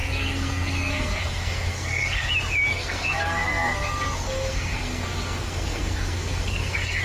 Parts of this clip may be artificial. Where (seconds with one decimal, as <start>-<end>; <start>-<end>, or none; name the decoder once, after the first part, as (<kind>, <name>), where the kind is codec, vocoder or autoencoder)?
0.0-2.3 (codec, SNAC); 2.7-7.0